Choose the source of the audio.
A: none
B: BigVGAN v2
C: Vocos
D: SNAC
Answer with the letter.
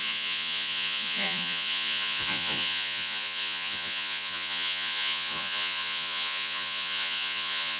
C